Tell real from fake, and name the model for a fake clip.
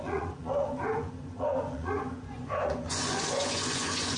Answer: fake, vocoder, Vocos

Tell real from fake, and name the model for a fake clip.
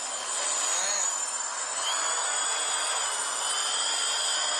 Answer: real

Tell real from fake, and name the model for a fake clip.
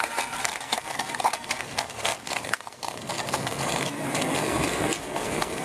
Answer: fake, codec, SNAC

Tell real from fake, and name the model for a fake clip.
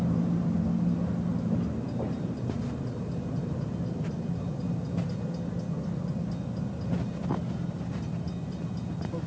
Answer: real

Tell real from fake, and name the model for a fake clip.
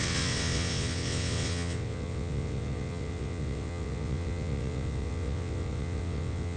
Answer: fake, vocoder, WaveNeXt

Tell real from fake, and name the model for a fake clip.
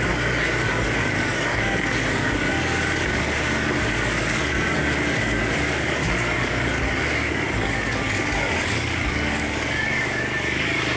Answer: fake, codec, DAC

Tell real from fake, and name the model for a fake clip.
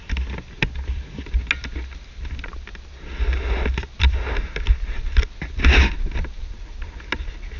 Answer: real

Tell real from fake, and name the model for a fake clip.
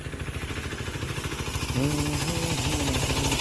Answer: real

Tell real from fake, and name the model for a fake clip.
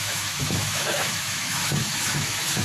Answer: fake, autoencoder, DAC-VAE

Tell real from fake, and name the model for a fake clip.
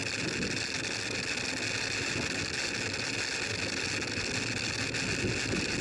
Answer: real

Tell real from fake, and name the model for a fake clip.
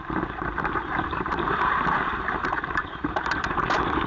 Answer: fake, vocoder, BigVGAN v2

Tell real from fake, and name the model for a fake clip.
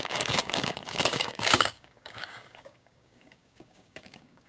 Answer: fake, codec, DAC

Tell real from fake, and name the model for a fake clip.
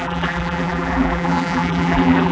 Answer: fake, vocoder, BigVGAN v2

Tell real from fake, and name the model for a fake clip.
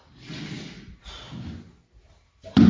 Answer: real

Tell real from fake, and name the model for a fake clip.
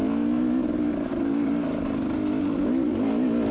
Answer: real